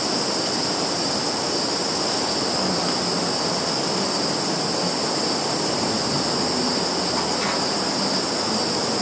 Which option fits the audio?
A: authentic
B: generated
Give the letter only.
A